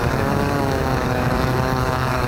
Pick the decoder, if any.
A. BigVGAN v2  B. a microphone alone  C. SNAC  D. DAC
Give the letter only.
D